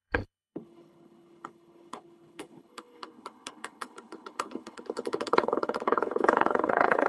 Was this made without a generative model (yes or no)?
no